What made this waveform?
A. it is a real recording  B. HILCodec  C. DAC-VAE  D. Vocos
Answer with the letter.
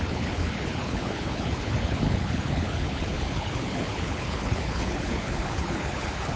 B